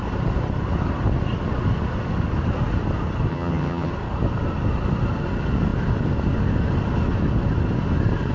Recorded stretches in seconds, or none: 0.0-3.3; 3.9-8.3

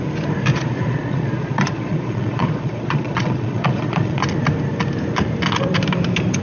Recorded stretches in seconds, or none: 0.0-0.5; 4.2-6.4